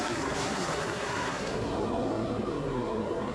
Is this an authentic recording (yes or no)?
no